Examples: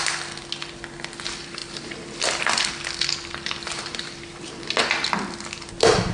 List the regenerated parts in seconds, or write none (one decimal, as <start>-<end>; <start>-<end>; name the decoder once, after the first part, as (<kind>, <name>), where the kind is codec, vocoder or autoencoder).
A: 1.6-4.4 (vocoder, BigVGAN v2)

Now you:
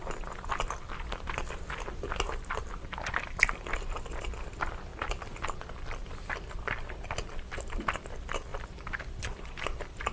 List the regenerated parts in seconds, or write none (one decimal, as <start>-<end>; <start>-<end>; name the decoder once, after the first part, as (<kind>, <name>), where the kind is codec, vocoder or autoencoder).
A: 4.9-7.8 (vocoder, BigVGAN v2); 8.5-9.0

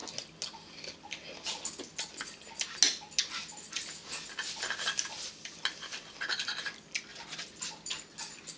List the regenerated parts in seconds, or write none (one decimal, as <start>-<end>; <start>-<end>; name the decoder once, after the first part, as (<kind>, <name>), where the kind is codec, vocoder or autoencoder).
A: 7.1-7.9 (vocoder, BigVGAN v2)